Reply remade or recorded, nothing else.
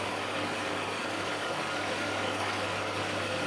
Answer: remade